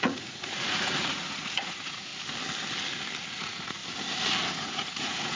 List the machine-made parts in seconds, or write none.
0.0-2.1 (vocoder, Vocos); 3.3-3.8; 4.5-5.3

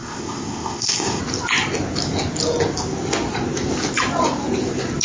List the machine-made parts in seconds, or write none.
0.0-1.2 (codec, ZipCodec)